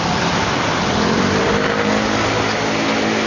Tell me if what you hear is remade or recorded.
recorded